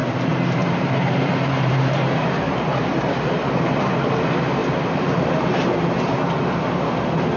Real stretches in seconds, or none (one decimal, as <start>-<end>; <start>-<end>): 3.5-4.6; 6.8-7.4